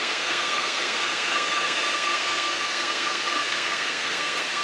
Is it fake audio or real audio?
fake